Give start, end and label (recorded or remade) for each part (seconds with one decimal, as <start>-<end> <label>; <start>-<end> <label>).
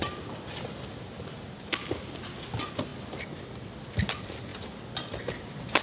0.0-5.8 recorded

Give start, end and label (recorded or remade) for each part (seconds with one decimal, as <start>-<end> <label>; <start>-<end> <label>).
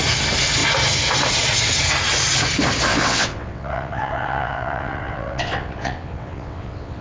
0.0-2.9 recorded; 2.9-7.0 remade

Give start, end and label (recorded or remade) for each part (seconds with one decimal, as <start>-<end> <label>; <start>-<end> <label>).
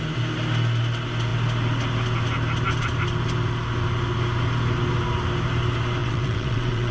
0.0-6.0 recorded; 6.0-6.9 remade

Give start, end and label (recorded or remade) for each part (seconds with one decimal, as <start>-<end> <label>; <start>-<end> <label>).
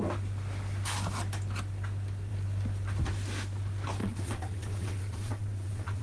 0.0-4.0 recorded; 4.0-6.0 remade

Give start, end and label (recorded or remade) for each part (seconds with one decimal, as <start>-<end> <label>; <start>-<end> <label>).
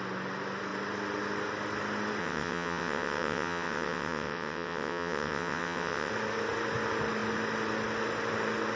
0.0-2.2 recorded; 2.2-6.1 remade; 6.1-8.8 recorded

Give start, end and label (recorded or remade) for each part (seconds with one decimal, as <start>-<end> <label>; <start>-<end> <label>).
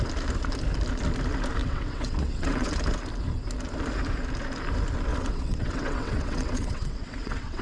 0.0-1.6 recorded; 1.6-2.7 remade; 2.7-5.1 recorded; 5.1-7.6 remade